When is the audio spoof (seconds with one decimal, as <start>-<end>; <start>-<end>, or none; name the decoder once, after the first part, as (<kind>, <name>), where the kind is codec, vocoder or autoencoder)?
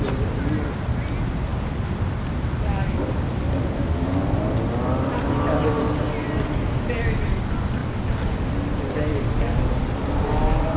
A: none